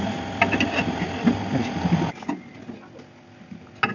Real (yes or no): yes